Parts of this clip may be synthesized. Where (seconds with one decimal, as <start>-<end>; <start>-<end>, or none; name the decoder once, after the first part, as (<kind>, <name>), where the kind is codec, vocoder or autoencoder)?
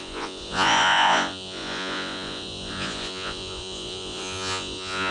0.0-5.1 (vocoder, Vocos)